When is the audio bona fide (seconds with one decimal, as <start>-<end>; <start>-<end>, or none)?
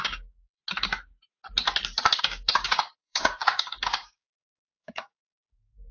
0.6-2.2